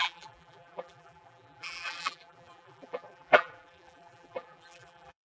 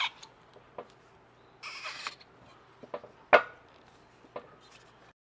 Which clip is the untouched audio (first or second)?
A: second